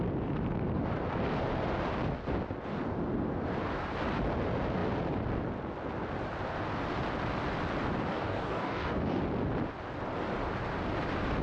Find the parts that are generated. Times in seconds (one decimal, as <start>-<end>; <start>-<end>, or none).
8.1-9.2